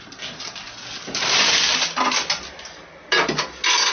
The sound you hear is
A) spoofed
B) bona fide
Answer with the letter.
B